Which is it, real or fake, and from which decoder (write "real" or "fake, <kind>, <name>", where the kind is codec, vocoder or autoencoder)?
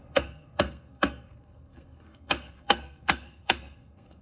fake, codec, SNAC